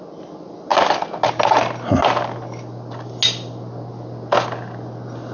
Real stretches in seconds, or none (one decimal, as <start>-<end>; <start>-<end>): 0.0-5.3